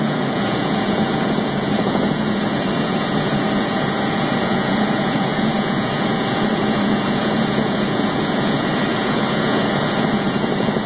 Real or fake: fake